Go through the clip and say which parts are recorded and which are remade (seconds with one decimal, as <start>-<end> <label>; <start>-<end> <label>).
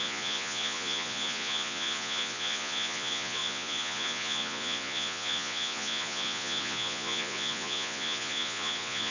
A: 0.0-9.1 remade